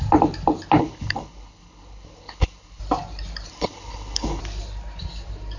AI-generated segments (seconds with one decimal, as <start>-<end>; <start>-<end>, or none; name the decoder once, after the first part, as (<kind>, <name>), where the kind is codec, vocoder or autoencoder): 0.8-2.8 (codec, HILCodec); 3.5-4.4